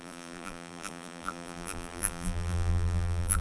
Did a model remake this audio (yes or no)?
yes